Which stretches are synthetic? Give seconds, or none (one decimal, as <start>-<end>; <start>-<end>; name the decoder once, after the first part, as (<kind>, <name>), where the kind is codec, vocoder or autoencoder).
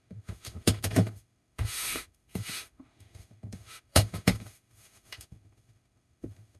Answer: 0.0-6.6 (autoencoder, DAC-VAE)